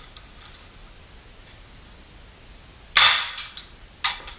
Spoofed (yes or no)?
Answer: no